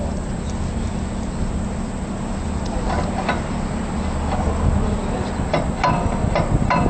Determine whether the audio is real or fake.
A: real